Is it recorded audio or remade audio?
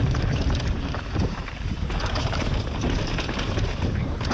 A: remade